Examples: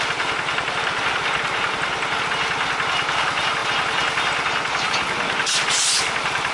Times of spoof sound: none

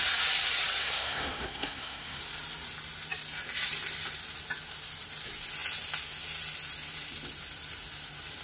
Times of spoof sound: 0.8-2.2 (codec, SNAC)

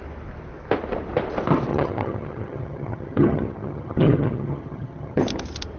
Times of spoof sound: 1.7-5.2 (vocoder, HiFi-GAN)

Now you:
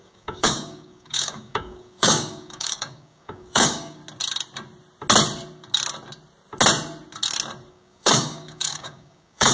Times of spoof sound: 0.0-4.0 (codec, DAC); 7.7-9.5

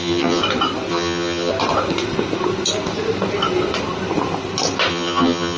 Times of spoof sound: 0.0-0.4 (vocoder, HiFi-GAN); 0.9-1.5; 4.9-5.6

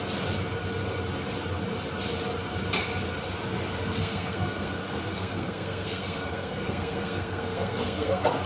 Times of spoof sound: 4.0-8.5 (codec, SNAC)

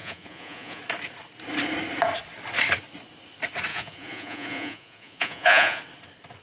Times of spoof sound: 0.0-0.8 (vocoder, Vocos); 3.7-5.8

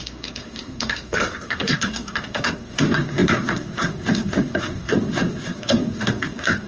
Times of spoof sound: 0.0-6.7 (codec, SNAC)